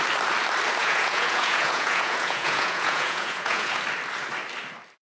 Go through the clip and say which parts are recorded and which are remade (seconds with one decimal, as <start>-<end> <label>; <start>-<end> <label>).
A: 0.0-0.8 recorded; 0.8-3.8 remade; 3.8-5.0 recorded